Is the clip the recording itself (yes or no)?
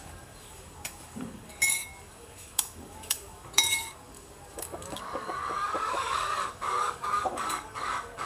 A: no